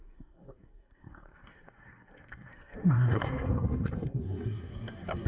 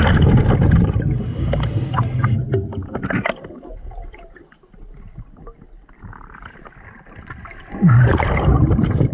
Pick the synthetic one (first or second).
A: first